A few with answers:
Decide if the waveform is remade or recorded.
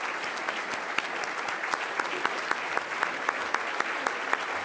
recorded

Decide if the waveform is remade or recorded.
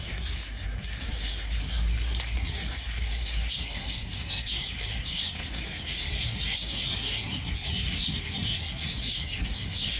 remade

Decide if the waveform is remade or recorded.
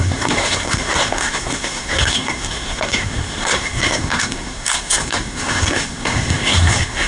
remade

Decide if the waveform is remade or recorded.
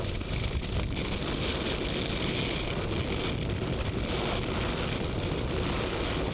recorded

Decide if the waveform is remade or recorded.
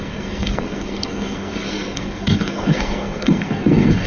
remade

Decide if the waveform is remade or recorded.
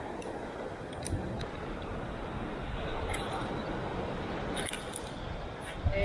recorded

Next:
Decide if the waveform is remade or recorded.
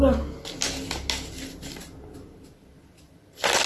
recorded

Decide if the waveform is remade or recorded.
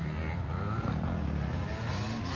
recorded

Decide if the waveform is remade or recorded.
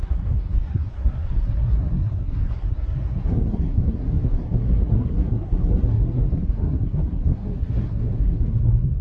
remade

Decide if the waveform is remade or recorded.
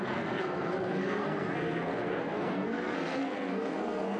remade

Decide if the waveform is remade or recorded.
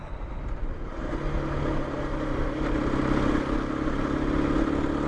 recorded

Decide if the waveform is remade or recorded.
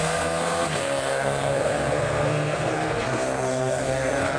remade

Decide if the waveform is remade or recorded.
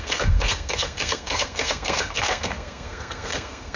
remade